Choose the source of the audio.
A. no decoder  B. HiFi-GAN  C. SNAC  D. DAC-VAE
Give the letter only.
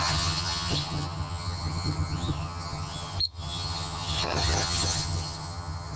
B